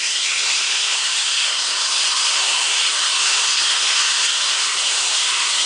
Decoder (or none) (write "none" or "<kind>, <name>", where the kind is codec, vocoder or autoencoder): codec, SNAC